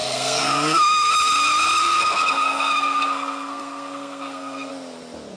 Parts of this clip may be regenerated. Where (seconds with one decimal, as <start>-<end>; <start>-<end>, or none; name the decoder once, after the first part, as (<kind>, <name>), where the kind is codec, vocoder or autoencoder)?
0.0-1.1 (codec, SNAC); 1.8-4.7